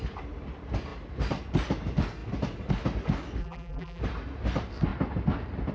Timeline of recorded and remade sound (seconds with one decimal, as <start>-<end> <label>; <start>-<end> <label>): 0.0-3.4 recorded; 3.4-4.0 remade; 4.0-5.7 recorded